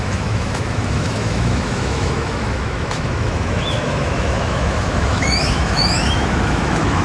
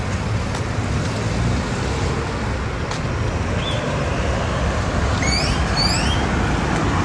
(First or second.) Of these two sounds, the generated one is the first